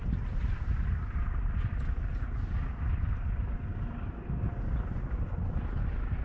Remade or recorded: recorded